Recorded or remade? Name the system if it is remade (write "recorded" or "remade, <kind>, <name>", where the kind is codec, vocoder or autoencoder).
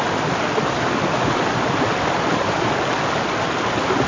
recorded